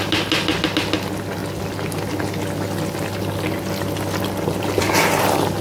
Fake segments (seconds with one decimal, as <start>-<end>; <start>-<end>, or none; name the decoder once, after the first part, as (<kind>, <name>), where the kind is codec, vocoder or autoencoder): none

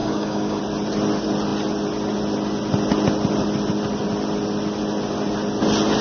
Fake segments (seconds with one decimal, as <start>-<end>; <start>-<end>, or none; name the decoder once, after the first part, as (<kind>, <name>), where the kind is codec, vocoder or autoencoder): 0.0-0.6 (codec, DAC)

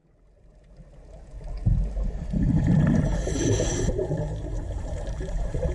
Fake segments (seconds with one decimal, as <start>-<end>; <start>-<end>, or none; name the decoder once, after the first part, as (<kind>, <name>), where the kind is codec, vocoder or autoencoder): 3.4-5.7 (vocoder, BigVGAN v2)